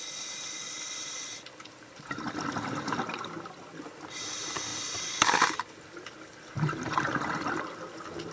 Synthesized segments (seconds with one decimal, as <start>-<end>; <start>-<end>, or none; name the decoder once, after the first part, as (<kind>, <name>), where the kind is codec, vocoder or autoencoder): none